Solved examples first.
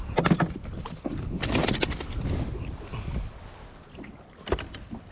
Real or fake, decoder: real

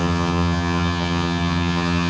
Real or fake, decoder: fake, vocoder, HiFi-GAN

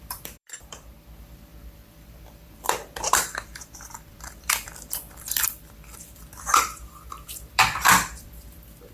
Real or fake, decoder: fake, vocoder, BigVGAN v2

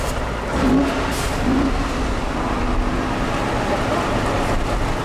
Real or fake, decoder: real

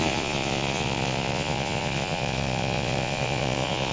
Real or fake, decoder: fake, vocoder, Vocos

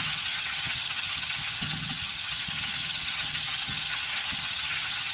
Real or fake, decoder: fake, vocoder, HiFi-GAN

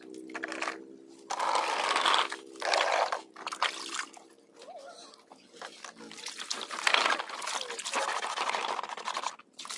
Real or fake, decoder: real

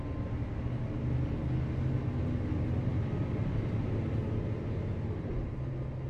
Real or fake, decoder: real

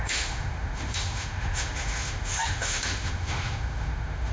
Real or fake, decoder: fake, autoencoder, DAC-VAE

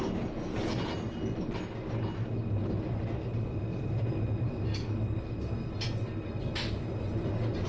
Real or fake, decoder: real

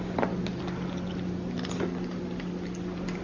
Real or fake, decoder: real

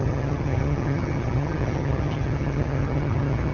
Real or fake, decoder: fake, vocoder, HiFi-GAN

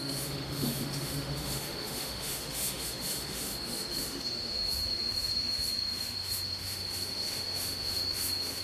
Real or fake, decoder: fake, autoencoder, DAC-VAE